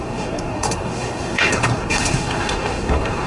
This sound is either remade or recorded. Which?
remade